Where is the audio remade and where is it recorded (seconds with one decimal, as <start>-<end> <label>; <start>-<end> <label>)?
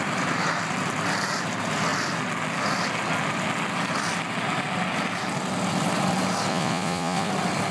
0.0-6.5 recorded; 6.5-7.3 remade; 7.3-7.7 recorded